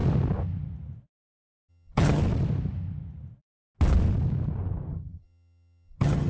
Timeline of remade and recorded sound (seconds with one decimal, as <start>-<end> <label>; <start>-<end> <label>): 0.0-1.7 recorded; 1.7-2.2 remade; 2.2-4.9 recorded; 4.9-6.3 remade